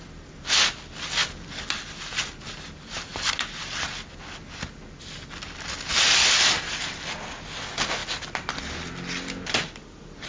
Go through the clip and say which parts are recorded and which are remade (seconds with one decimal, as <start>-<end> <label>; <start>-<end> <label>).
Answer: 0.0-10.3 recorded